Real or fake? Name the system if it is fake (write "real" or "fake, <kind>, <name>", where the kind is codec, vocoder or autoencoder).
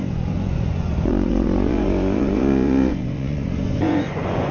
fake, vocoder, Vocos